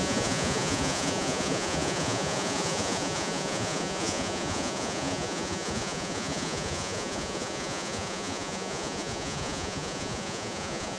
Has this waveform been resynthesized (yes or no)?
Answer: yes